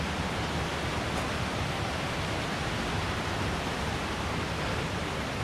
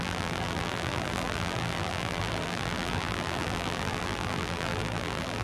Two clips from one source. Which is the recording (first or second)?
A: first